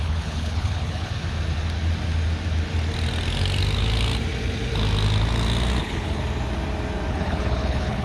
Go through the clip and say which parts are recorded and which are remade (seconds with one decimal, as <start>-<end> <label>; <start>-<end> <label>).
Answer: 0.0-1.1 remade; 1.1-5.8 recorded; 5.8-6.2 remade; 6.2-7.1 recorded; 7.1-8.0 remade